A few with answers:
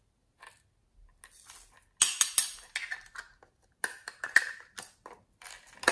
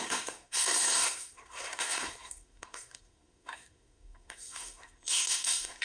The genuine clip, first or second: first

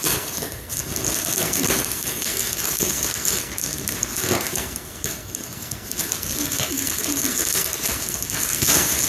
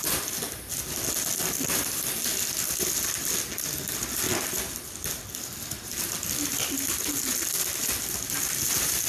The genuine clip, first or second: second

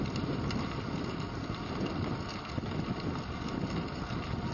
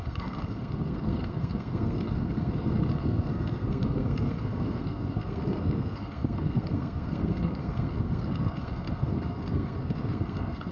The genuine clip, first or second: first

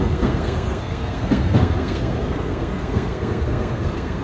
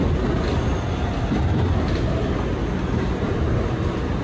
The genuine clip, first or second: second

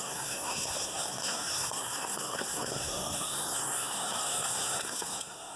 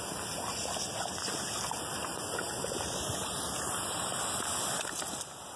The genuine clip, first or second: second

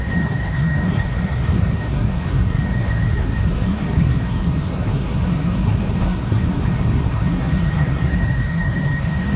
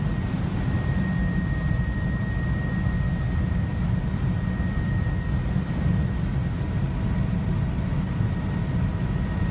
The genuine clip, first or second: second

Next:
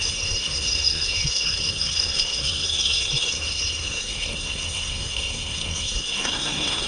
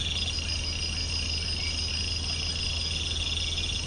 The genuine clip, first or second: second